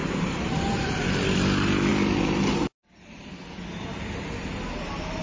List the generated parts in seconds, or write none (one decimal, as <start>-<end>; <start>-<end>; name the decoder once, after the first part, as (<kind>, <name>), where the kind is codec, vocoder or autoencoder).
1.9-3.3 (vocoder, BigVGAN v2)